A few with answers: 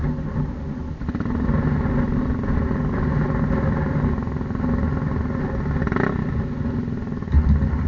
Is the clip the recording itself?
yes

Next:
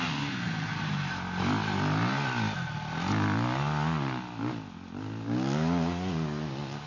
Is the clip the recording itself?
yes